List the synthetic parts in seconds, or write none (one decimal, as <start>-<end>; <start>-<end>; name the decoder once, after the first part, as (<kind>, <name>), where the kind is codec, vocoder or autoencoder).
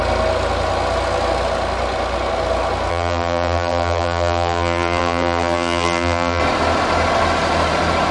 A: 2.9-6.4 (vocoder, BigVGAN v2)